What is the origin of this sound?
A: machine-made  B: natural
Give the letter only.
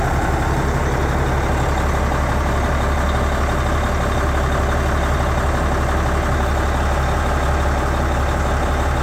B